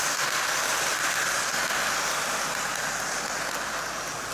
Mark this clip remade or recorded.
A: recorded